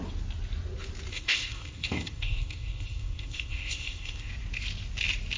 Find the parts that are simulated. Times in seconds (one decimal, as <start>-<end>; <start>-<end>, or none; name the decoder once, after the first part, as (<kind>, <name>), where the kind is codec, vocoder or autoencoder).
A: 1.1-4.3 (codec, ZipCodec)